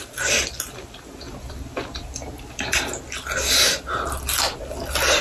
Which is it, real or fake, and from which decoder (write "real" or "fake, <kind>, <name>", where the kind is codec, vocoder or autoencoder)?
real